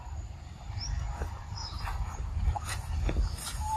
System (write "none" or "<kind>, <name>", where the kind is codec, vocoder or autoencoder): vocoder, BigVGAN v2